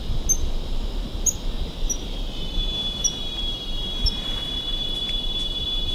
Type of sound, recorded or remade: recorded